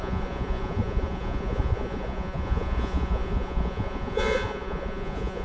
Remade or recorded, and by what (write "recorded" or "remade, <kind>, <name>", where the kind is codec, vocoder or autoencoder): remade, vocoder, Vocos